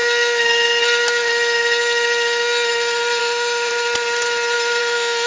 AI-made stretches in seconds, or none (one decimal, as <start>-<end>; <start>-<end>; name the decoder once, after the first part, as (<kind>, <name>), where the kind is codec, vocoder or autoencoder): 3.2-3.7 (autoencoder, DAC-VAE); 4.8-5.3